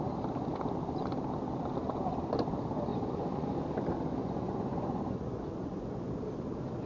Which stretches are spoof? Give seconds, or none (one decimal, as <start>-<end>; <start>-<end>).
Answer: 2.9-3.6; 4.2-6.1